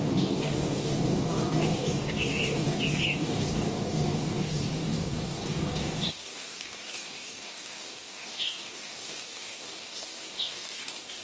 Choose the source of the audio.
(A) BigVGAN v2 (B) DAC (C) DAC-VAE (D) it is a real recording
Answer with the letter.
B